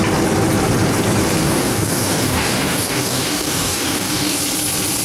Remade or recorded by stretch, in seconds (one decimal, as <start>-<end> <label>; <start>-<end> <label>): 0.0-1.4 recorded; 1.4-4.4 remade; 4.4-5.0 recorded